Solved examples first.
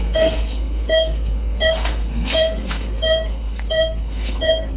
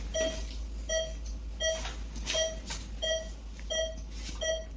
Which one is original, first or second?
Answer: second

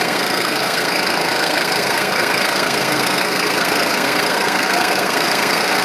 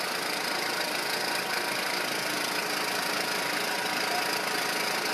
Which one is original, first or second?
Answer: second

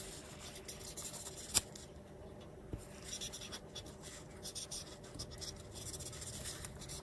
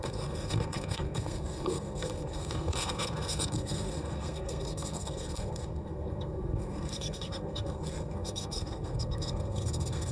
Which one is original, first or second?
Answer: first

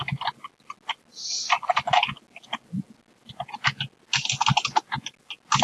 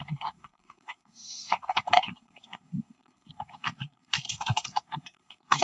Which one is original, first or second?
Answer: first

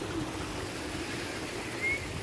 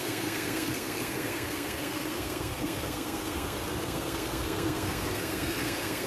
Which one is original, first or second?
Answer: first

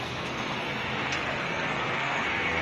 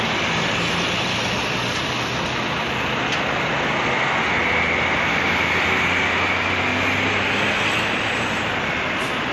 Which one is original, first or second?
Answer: second